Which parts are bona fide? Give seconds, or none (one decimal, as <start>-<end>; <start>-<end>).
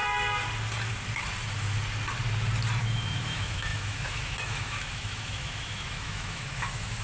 0.0-2.8